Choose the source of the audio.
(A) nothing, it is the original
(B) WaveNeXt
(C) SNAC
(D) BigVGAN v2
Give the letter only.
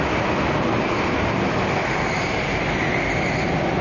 A